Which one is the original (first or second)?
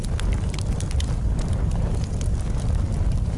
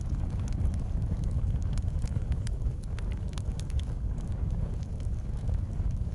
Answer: first